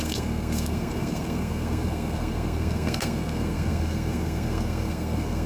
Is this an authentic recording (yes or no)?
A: no